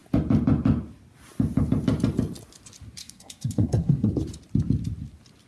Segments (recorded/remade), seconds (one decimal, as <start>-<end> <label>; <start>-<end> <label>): 0.0-3.0 recorded; 3.0-4.1 remade; 4.1-5.5 recorded

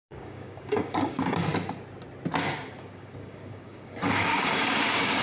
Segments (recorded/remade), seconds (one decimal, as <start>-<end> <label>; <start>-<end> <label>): 0.0-1.5 remade; 1.5-2.8 recorded; 2.8-5.2 remade

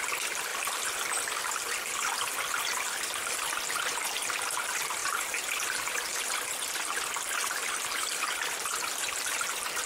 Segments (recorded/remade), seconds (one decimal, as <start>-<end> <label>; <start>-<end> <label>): 0.0-9.9 recorded

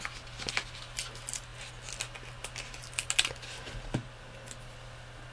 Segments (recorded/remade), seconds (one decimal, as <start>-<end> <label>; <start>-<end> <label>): 0.0-5.3 recorded

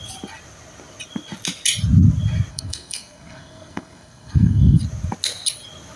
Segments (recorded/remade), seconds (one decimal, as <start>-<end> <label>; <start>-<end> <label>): 0.0-2.5 recorded; 2.5-4.8 remade; 4.8-6.0 recorded

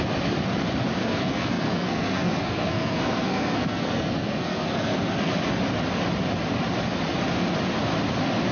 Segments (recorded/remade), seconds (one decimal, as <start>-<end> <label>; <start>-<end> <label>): 0.0-1.0 recorded; 1.0-5.3 remade; 5.3-8.5 recorded

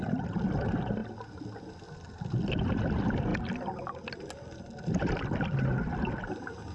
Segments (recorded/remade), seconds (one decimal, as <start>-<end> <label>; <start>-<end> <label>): 0.0-6.7 recorded